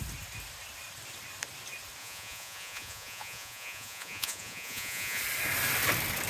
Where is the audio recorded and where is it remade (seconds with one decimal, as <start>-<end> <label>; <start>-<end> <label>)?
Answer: 0.0-2.0 recorded; 2.0-5.2 remade; 5.2-6.3 recorded